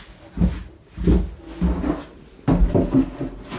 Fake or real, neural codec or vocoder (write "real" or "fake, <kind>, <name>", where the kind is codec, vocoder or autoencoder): real